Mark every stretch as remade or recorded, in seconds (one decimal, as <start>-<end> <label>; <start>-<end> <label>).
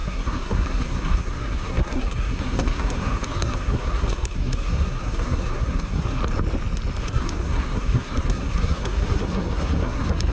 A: 0.0-6.2 remade; 6.2-7.0 recorded; 7.0-10.3 remade